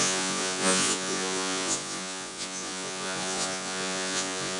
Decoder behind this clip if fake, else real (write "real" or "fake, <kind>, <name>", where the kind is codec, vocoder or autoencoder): fake, vocoder, Vocos